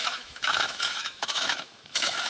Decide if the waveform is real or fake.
fake